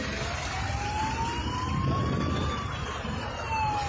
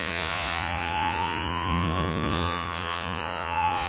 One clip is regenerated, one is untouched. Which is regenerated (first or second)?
second